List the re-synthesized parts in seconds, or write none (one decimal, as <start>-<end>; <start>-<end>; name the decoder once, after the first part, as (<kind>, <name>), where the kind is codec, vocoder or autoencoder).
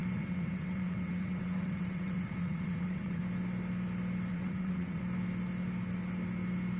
0.0-3.2 (vocoder, WaveNeXt); 4.3-5.0